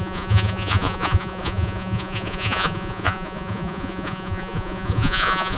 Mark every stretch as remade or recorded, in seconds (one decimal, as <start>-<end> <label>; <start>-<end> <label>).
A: 0.0-5.6 remade